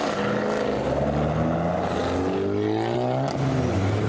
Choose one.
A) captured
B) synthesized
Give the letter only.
A